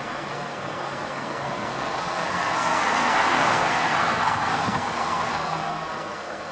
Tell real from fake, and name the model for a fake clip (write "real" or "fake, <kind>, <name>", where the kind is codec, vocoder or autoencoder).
fake, codec, SNAC